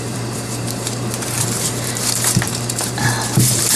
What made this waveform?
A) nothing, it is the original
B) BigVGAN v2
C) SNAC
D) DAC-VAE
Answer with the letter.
B